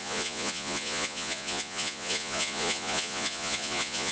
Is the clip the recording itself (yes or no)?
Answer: no